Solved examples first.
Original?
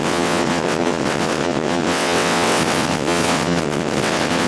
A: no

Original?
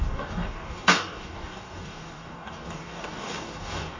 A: no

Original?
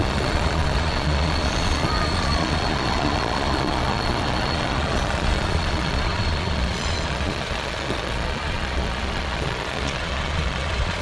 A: no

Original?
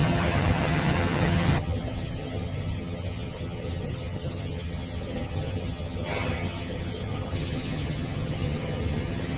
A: no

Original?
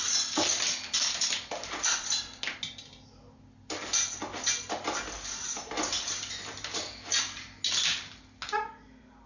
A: yes